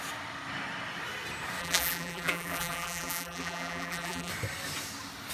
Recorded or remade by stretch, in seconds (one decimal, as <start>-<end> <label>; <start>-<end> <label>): 0.0-1.6 recorded; 1.6-4.3 remade; 4.3-5.3 recorded